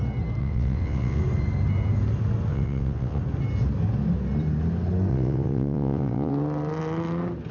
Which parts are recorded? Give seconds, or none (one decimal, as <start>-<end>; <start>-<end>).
0.0-0.4; 1.2-2.5; 3.2-5.1; 6.3-7.5